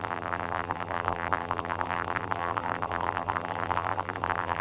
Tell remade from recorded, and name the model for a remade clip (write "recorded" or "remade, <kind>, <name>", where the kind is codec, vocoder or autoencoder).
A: remade, vocoder, BigVGAN v2